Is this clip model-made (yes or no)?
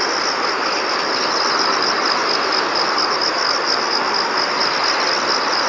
no